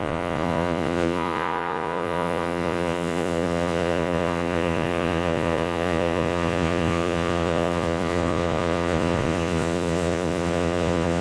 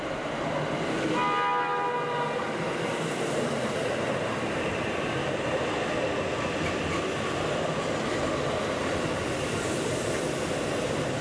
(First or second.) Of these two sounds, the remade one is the first